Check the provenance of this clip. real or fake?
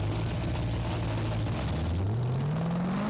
real